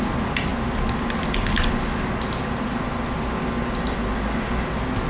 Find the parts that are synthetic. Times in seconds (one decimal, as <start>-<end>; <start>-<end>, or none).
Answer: none